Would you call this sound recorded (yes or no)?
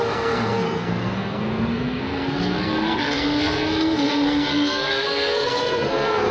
no